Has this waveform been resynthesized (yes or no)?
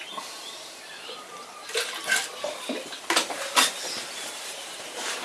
yes